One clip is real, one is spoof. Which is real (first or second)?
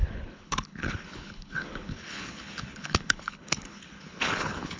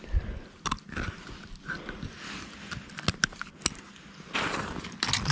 second